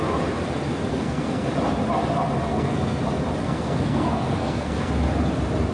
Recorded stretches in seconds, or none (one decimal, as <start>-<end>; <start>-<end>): 0.0-0.9; 1.5-2.5; 3.0-3.4; 4.9-5.7